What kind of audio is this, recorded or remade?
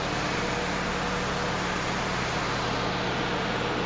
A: recorded